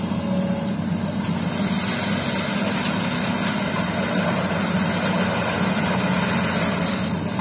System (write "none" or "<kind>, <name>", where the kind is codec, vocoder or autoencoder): none